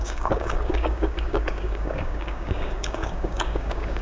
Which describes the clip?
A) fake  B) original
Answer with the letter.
A